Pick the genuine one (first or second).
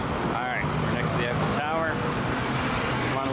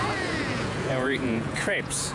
first